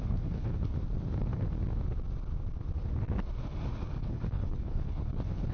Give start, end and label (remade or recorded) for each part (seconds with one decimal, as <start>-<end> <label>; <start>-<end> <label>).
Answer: 0.0-0.7 remade; 0.7-4.0 recorded; 4.0-5.5 remade